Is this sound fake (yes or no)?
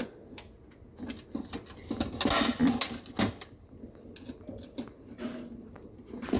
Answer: no